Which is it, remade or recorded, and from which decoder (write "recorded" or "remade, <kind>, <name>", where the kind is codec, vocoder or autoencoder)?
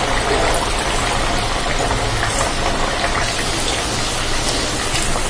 recorded